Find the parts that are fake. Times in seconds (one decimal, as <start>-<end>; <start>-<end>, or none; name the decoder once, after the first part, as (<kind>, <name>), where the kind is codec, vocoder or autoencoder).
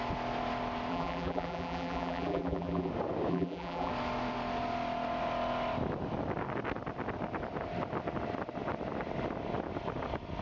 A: 0.9-2.9 (vocoder, BigVGAN v2); 3.3-3.9